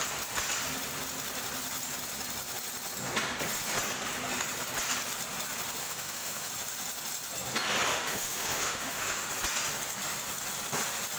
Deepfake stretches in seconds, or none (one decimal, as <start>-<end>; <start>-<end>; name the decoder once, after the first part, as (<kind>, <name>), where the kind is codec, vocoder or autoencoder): 5.8-6.5 (autoencoder, DAC-VAE); 7.9-9.3